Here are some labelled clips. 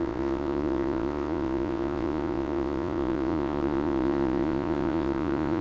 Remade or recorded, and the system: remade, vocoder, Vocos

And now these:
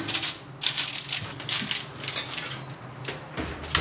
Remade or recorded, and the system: recorded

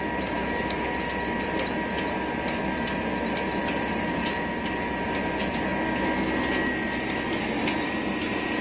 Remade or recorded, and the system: recorded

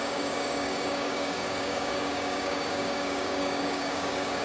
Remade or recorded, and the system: remade, codec, DAC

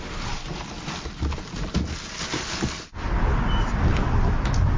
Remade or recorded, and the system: recorded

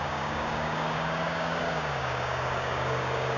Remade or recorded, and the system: remade, codec, DAC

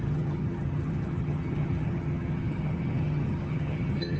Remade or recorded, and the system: remade, vocoder, HiFi-GAN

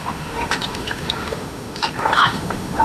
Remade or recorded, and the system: remade, autoencoder, DAC-VAE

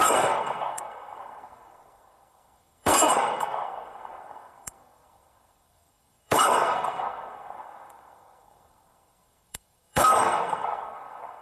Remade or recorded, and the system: remade, codec, SNAC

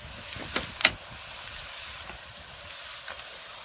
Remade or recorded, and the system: recorded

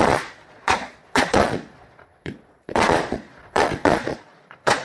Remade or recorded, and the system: remade, vocoder, Vocos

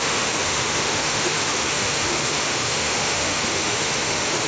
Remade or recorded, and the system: remade, autoencoder, DAC-VAE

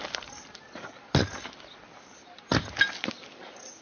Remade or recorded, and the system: recorded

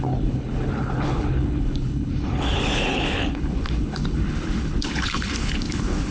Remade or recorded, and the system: remade, codec, HILCodec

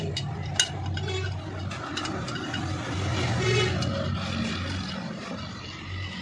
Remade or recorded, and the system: recorded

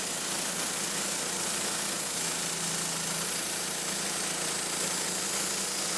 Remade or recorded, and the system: recorded